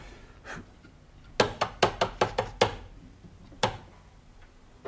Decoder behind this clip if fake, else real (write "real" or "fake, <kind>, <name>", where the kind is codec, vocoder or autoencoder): real